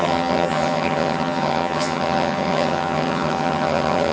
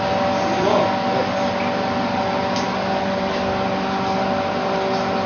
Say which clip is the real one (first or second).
second